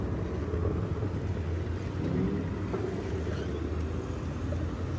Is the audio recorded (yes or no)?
yes